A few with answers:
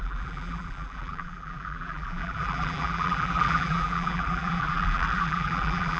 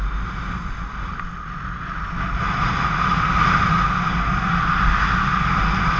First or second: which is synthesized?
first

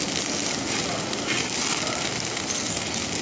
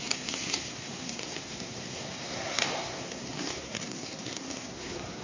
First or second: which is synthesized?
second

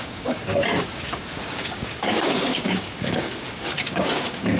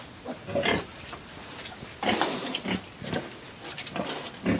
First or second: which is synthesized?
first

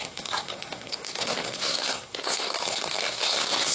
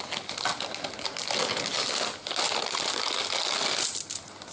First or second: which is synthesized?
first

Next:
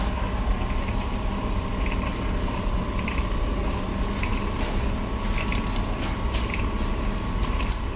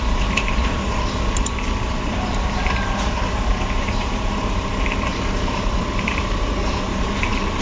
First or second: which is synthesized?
second